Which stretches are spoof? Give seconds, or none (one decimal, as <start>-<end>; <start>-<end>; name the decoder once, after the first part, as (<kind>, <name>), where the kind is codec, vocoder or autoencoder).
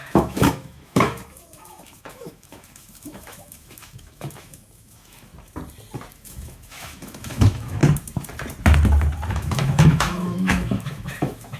0.0-5.3 (autoencoder, DAC-VAE); 6.1-7.8; 9.3-11.6